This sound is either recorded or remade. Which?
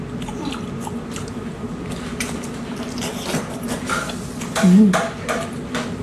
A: recorded